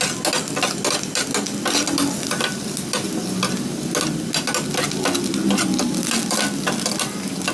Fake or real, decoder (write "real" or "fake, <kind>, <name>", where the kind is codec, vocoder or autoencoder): real